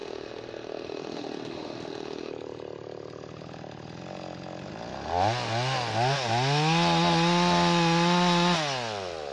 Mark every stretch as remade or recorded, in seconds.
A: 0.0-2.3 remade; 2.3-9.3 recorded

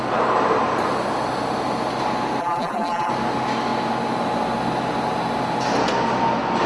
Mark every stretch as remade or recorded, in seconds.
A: 0.0-2.4 recorded; 2.4-3.1 remade; 3.1-6.7 recorded

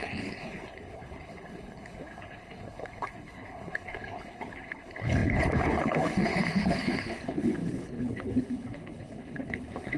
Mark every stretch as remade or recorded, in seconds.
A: 0.0-10.0 remade